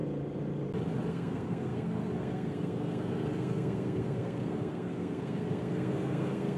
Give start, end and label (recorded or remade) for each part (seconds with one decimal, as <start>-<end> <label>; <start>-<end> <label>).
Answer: 0.0-1.1 recorded; 1.1-6.6 remade